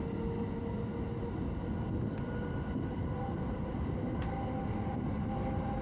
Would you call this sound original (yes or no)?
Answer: yes